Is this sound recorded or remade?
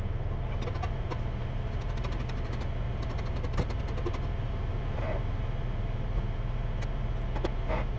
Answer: recorded